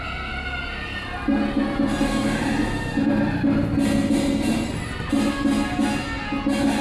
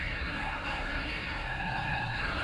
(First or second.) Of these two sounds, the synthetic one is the second